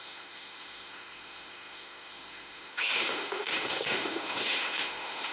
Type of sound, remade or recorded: remade